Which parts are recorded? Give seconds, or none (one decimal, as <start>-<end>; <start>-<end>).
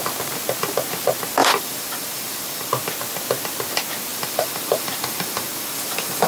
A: 0.0-1.4; 2.7-4.1